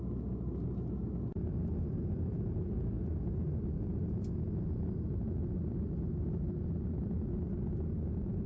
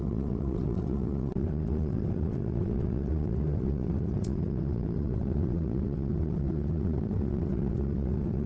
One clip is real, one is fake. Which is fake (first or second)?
second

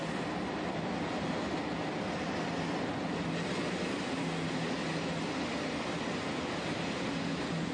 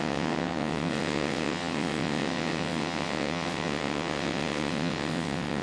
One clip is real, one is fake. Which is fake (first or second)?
second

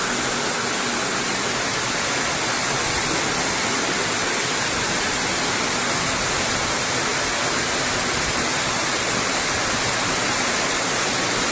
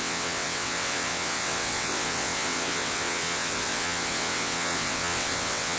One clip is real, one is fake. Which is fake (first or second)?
second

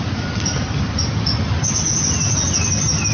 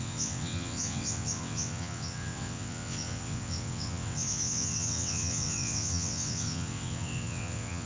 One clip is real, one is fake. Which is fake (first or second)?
second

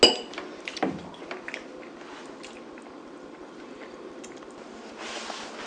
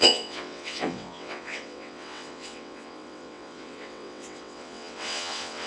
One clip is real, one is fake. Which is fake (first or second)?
second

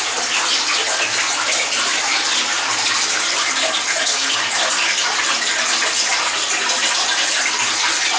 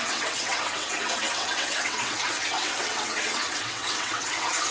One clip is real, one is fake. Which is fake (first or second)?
second